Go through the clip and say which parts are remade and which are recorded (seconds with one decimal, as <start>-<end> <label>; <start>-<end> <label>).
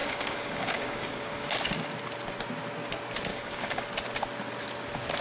0.0-1.5 remade; 1.5-3.3 recorded; 3.3-3.9 remade; 3.9-5.2 recorded